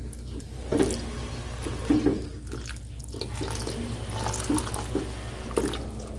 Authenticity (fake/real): real